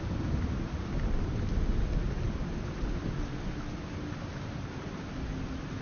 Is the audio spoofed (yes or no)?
no